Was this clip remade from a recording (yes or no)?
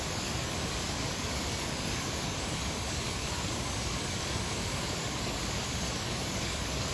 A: yes